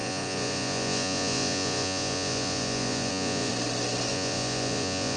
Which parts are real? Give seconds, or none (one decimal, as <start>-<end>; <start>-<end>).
3.5-4.1